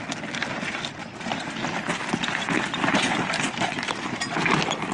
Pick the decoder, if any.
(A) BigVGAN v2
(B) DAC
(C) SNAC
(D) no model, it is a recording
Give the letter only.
D